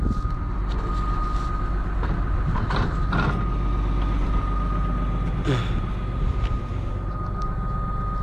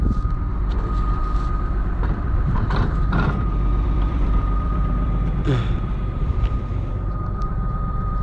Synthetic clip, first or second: second